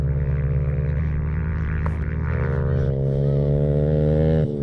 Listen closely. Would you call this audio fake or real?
real